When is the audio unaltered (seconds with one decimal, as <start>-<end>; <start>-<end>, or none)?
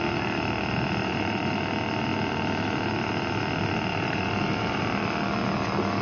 0.0-1.0; 1.6-3.9; 4.8-6.0